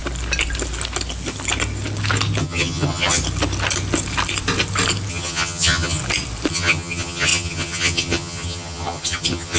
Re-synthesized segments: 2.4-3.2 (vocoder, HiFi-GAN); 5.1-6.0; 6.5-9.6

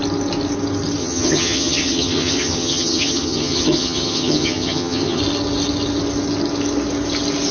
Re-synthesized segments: 1.0-5.2 (vocoder, HiFi-GAN)

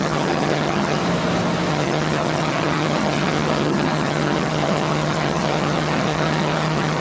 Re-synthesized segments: 0.0-1.0 (vocoder, HiFi-GAN); 1.7-7.0

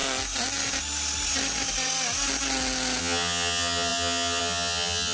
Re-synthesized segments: 3.0-5.1 (vocoder, HiFi-GAN)

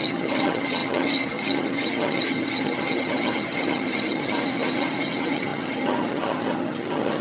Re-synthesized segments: 0.0-7.2 (vocoder, HiFi-GAN)